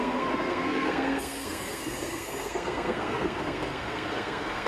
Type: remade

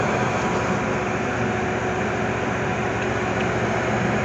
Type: recorded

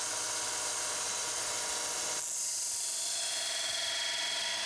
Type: recorded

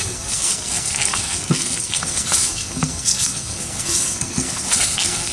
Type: remade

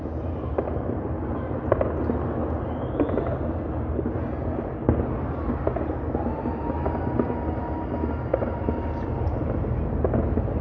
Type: recorded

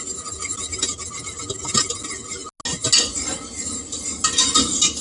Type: recorded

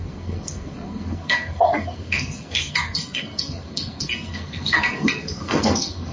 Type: remade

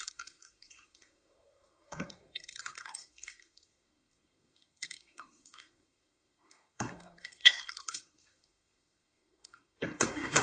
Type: remade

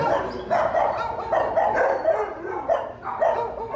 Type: recorded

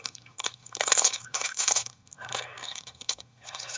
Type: remade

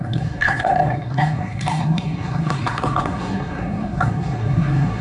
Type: remade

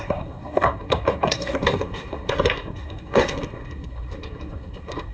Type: remade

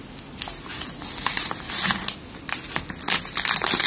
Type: recorded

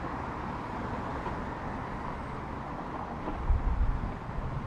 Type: recorded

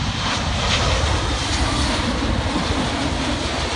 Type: recorded